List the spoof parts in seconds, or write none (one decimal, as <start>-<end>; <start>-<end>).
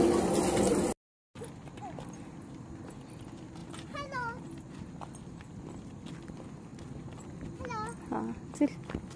3.6-4.7